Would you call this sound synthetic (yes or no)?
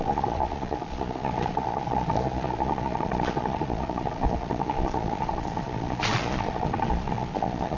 yes